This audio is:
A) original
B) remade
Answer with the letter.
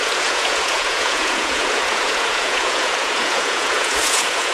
B